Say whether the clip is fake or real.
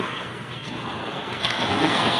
fake